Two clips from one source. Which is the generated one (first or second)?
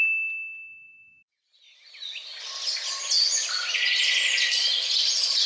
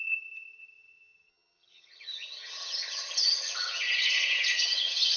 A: second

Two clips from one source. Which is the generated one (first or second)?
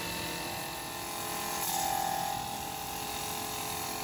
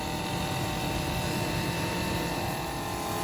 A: second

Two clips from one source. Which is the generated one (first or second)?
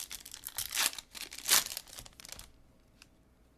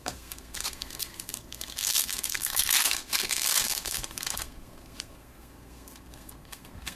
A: second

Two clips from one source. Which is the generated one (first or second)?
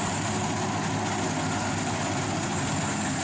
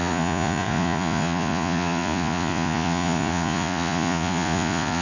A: second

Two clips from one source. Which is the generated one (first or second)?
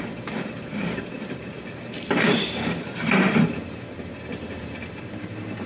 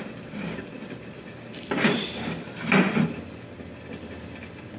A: first